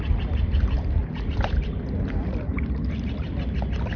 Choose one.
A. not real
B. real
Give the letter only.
B